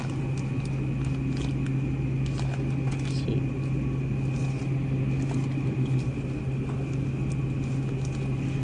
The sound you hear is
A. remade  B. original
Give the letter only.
B